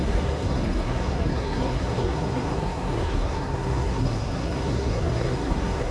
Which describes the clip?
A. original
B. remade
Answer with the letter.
B